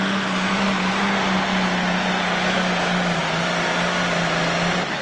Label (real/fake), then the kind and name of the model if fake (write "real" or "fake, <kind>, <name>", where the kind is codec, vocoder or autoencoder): real